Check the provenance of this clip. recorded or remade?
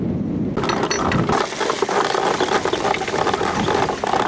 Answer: recorded